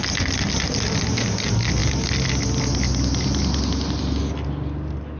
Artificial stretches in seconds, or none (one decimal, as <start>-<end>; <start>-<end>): none

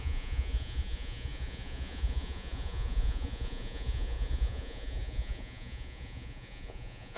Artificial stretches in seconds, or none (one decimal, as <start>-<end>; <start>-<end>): 0.0-7.2

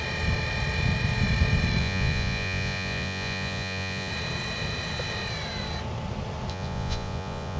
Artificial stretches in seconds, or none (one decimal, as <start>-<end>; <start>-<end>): 1.8-4.1; 6.5-7.6

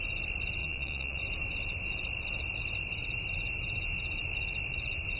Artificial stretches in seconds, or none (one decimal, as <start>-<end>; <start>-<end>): 0.6-1.2

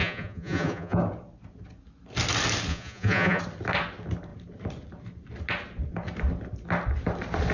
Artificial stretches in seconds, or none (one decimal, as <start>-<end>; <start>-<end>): 0.0-1.0; 2.7-3.4

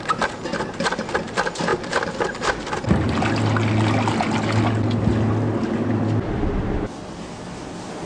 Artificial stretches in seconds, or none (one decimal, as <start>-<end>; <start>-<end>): none